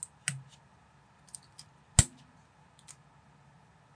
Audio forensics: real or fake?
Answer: real